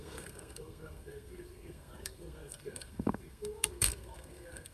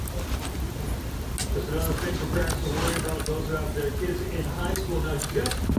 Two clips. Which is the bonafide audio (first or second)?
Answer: second